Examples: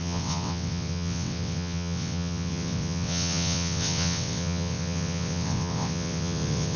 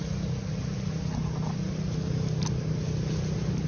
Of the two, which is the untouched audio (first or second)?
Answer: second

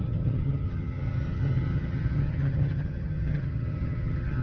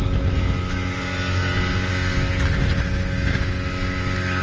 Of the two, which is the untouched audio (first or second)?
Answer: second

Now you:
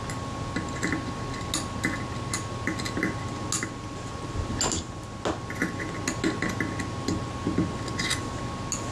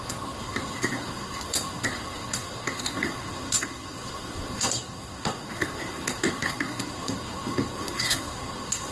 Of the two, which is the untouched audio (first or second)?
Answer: first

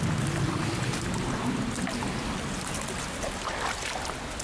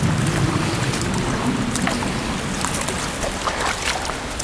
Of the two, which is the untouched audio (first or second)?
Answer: first